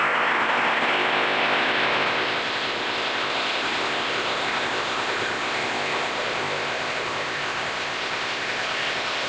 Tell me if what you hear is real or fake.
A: fake